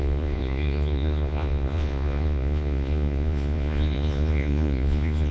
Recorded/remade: remade